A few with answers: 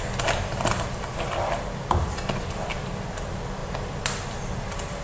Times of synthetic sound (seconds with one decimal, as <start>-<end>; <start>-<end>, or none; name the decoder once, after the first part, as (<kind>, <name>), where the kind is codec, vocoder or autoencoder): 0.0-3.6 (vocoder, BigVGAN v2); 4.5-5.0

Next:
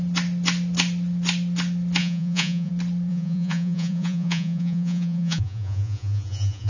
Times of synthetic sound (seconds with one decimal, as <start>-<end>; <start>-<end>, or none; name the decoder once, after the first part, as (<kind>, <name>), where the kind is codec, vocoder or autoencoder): 2.0-2.7 (vocoder, Vocos); 3.1-6.7

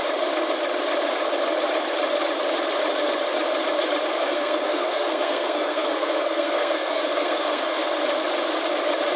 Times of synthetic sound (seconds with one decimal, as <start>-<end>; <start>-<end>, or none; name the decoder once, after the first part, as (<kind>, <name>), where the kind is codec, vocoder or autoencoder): 4.2-7.8 (codec, SNAC)